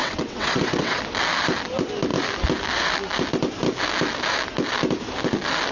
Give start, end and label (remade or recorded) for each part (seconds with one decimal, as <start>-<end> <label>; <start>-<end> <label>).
0.0-1.0 remade; 1.0-5.7 recorded